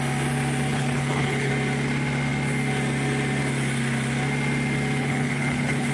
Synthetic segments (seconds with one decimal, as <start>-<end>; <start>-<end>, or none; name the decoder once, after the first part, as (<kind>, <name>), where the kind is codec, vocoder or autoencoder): 0.7-1.5 (codec, HILCodec); 5.0-5.9